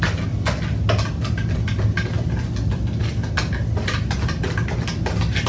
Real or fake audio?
real